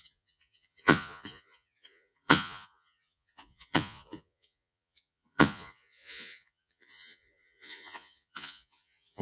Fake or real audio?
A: fake